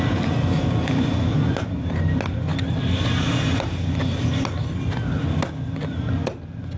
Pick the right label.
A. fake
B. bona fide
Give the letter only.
B